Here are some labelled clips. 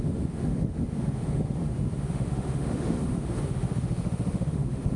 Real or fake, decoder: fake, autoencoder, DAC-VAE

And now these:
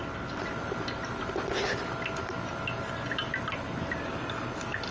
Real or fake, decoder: real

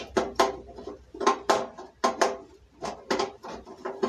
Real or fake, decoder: real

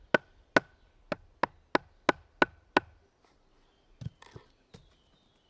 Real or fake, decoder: real